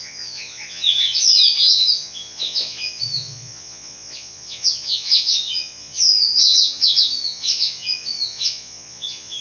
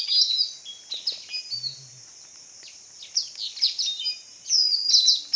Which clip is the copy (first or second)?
first